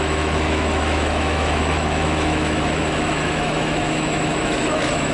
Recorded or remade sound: remade